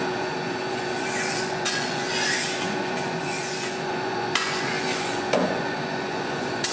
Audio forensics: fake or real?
fake